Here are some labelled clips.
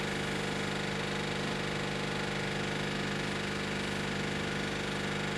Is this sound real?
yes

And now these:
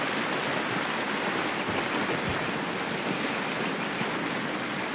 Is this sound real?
yes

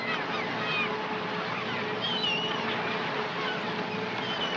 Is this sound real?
yes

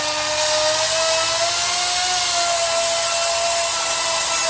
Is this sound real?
yes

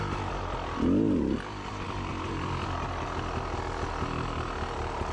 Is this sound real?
yes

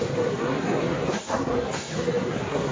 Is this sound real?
no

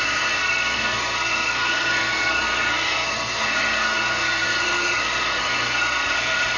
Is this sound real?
no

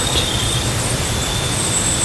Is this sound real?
yes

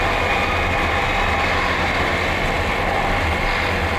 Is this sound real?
yes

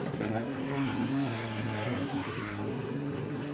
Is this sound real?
no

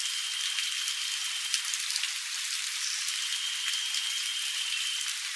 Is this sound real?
yes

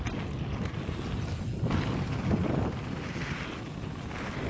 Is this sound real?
yes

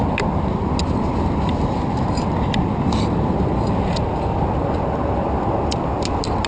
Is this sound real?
yes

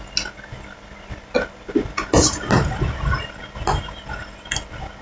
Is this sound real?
yes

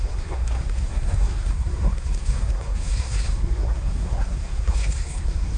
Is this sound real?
no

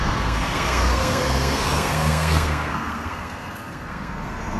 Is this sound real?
no